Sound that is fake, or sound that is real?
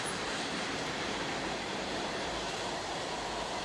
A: fake